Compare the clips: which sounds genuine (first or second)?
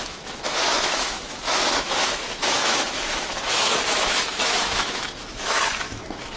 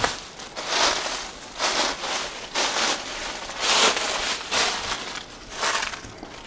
second